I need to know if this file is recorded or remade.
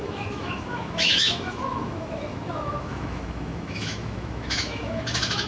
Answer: remade